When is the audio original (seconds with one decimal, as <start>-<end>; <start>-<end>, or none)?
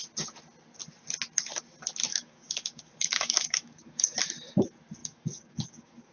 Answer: 0.0-2.1; 4.2-5.0